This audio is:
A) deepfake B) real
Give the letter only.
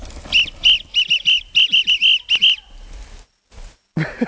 B